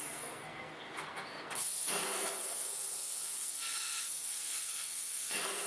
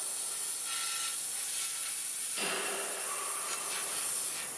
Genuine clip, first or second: second